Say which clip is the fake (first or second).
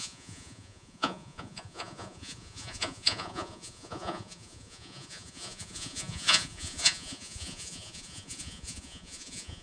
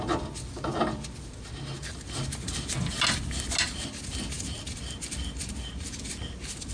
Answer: first